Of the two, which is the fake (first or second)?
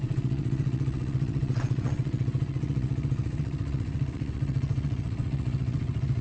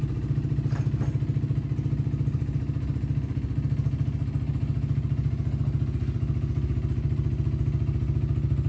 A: first